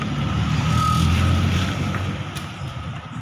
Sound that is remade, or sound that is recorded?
recorded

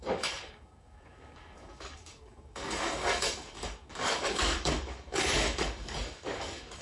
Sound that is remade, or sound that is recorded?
remade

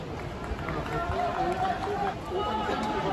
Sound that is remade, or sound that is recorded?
recorded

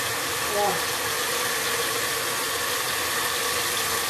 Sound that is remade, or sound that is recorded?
recorded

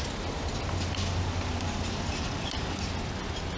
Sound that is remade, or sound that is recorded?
recorded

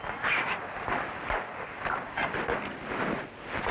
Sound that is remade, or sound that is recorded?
recorded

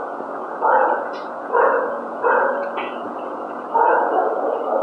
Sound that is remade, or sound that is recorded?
remade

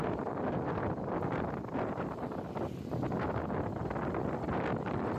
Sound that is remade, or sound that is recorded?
recorded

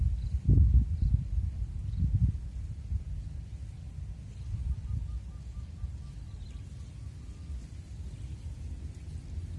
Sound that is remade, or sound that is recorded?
recorded